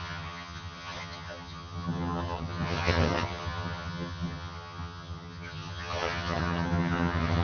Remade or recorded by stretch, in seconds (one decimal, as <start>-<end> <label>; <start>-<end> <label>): 0.0-7.4 remade